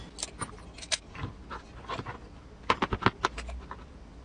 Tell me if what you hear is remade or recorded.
recorded